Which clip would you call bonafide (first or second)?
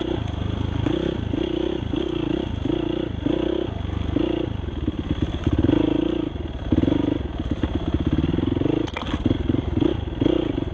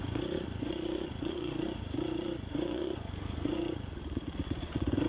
first